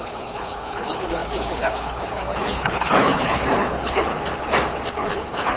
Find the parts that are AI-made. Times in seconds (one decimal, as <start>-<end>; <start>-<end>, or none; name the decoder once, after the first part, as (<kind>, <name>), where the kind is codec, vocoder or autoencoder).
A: 0.0-4.1 (codec, HILCodec); 4.9-5.6